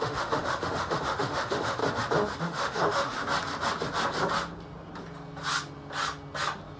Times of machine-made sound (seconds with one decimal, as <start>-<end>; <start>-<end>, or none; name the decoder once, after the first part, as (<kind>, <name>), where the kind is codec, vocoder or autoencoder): 0.0-1.8 (autoencoder, DAC-VAE); 2.4-3.2